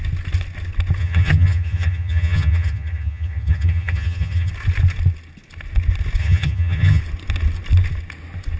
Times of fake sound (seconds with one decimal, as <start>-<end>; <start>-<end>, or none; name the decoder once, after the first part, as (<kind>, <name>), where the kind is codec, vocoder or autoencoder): 1.0-4.5 (vocoder, HiFi-GAN); 6.2-7.0